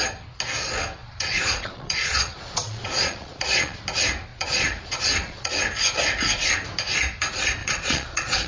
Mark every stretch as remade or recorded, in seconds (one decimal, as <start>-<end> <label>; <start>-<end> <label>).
0.0-1.0 recorded; 1.0-3.8 remade; 3.8-4.3 recorded; 4.3-5.5 remade; 5.5-7.6 recorded; 7.6-8.5 remade